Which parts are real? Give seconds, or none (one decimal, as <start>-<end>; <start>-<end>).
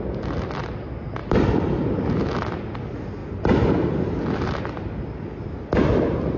0.0-1.2; 1.9-6.4